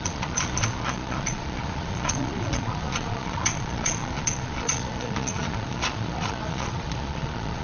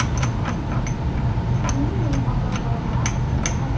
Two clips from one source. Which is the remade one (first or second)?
first